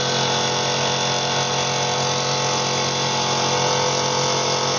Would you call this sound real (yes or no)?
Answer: yes